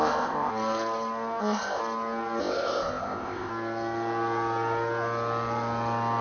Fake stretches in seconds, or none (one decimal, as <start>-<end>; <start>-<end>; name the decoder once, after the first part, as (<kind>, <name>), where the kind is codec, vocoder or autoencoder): 0.0-0.5 (codec, ZipCodec); 1.4-1.8; 2.4-3.5